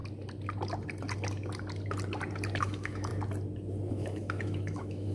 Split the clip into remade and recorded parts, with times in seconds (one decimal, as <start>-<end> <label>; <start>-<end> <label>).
0.0-2.6 recorded; 2.6-3.1 remade; 3.1-3.9 recorded; 3.9-5.1 remade